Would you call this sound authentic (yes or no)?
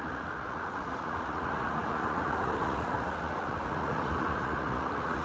no